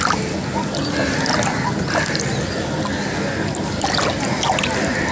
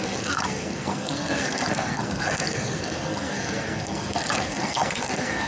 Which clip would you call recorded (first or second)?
first